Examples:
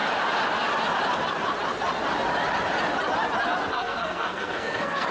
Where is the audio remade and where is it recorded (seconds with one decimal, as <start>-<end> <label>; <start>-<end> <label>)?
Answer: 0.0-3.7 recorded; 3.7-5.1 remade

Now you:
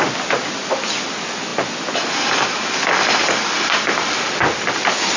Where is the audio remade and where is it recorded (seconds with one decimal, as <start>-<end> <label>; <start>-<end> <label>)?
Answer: 0.0-5.2 recorded

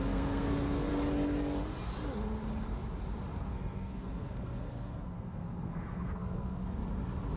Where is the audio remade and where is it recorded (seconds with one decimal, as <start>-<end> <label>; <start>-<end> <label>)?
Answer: 0.0-0.9 remade; 0.9-3.4 recorded; 3.4-6.8 remade; 6.8-7.4 recorded